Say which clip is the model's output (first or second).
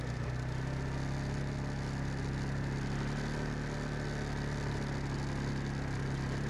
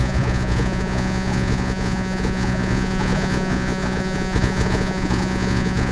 second